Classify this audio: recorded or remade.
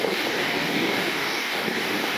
remade